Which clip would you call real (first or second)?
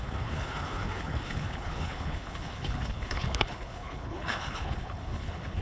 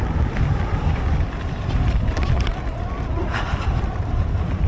second